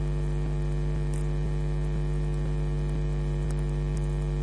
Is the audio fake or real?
real